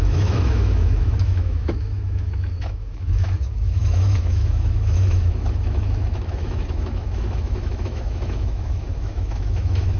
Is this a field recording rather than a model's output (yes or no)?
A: no